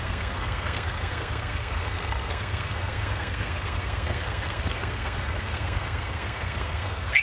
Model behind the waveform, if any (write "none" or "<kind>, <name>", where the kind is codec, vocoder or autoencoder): codec, SNAC